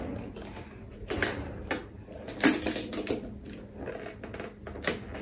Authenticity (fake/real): real